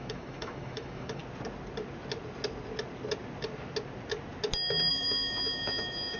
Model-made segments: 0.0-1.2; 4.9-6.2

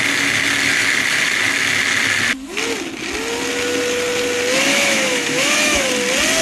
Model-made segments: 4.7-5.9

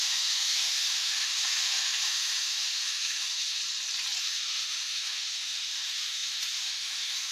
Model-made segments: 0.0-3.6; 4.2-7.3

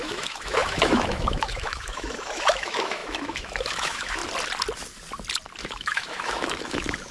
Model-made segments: 0.0-4.2; 5.6-7.1

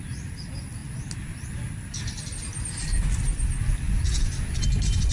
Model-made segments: none

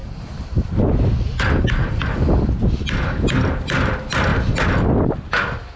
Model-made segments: none